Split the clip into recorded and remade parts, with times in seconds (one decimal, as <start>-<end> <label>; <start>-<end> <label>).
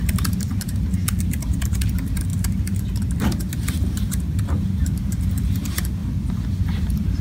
0.0-6.0 remade; 6.0-6.6 recorded; 6.6-7.2 remade